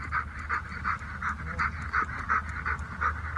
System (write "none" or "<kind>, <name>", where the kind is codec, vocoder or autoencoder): none